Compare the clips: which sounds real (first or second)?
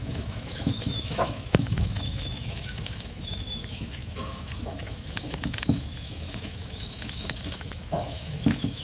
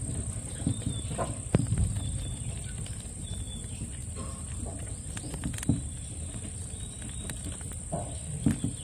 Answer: second